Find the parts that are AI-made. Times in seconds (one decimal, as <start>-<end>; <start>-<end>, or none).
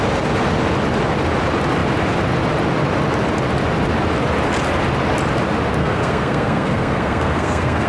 5.8-7.9